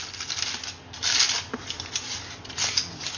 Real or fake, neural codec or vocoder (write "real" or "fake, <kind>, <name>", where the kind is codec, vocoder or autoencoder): real